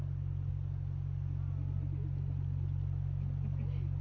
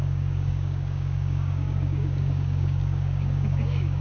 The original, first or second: first